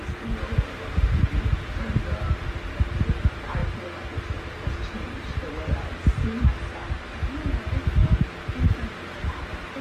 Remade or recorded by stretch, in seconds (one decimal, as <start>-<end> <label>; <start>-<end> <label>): 0.0-9.8 recorded